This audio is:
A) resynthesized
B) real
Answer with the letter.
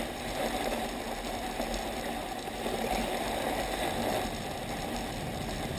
B